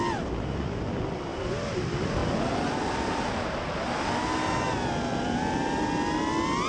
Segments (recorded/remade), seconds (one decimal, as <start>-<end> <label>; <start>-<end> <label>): 0.0-1.3 recorded; 1.3-1.8 remade; 1.8-6.7 recorded